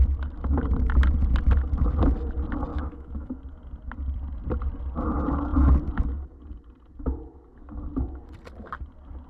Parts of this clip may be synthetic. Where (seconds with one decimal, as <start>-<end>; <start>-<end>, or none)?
2.7-3.3